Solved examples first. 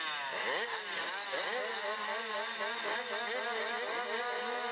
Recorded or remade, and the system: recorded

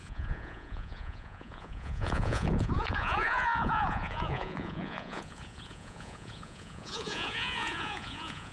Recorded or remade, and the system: remade, vocoder, Vocos